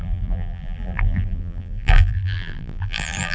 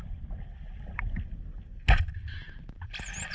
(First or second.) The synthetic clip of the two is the first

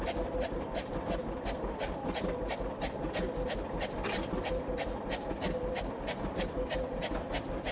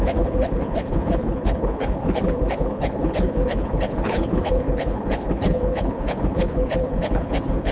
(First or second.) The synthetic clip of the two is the second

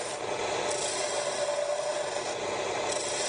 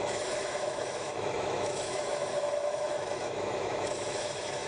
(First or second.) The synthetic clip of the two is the second